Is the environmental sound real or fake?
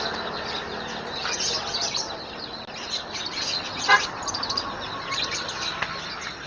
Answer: real